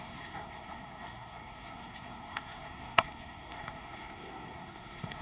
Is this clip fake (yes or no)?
yes